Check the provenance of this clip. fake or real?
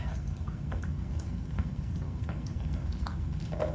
fake